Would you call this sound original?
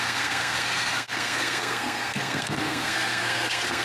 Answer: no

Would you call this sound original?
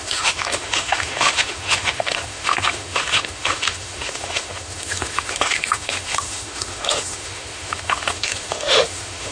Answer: no